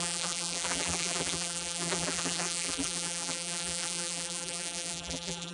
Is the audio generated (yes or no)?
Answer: yes